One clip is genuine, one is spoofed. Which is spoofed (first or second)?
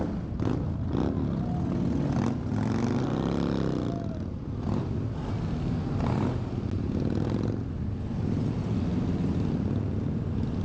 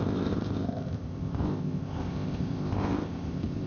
second